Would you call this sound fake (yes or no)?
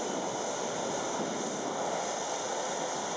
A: no